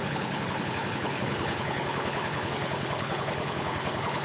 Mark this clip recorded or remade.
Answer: remade